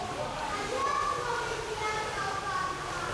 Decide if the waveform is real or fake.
real